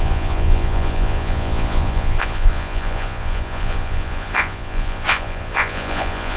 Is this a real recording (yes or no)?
no